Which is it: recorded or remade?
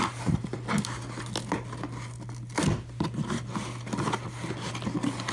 recorded